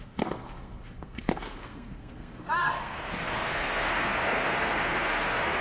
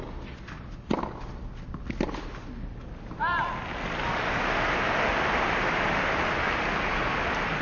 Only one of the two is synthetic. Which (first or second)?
first